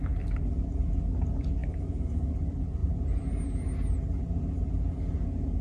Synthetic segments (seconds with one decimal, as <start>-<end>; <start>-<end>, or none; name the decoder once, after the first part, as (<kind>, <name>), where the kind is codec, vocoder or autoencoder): 1.6-2.3 (autoencoder, DAC-VAE)